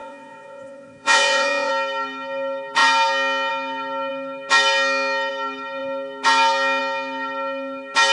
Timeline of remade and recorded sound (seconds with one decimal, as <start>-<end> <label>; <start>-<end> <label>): 0.0-1.7 remade; 1.7-8.1 recorded